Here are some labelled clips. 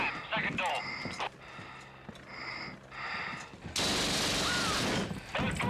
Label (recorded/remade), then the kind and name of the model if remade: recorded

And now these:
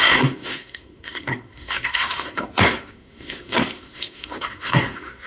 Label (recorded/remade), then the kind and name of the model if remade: remade, codec, SNAC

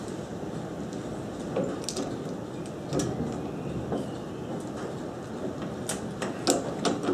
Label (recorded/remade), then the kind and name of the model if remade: recorded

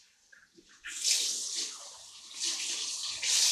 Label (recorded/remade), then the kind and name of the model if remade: remade, vocoder, BigVGAN v2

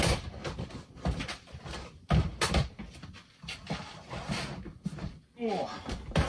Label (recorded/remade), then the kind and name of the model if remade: recorded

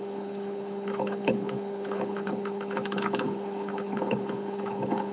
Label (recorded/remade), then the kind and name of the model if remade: remade, codec, HILCodec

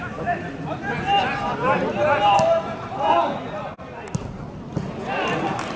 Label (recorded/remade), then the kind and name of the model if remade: recorded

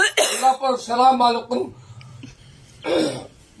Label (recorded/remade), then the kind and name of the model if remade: remade, vocoder, BigVGAN v2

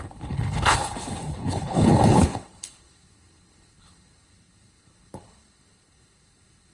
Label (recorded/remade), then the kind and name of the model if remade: remade, codec, HILCodec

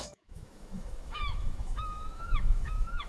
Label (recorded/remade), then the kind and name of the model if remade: remade, autoencoder, DAC-VAE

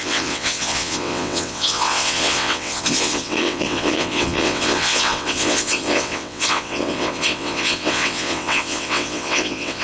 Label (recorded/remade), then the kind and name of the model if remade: remade, vocoder, WaveNeXt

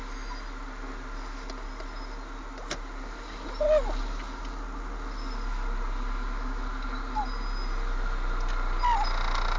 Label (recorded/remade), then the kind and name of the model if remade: recorded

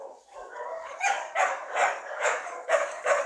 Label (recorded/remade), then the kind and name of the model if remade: remade, codec, DAC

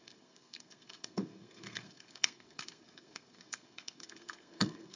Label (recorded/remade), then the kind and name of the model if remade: remade, codec, SNAC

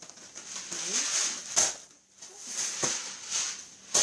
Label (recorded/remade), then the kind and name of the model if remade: recorded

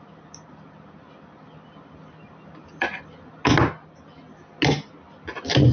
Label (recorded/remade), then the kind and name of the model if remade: recorded